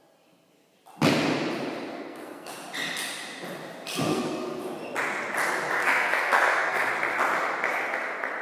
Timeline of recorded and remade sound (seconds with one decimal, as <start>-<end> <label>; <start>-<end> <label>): 0.0-1.9 recorded; 1.9-2.5 remade; 2.5-4.1 recorded; 4.1-4.6 remade; 4.6-5.8 recorded; 5.8-6.9 remade; 6.9-8.4 recorded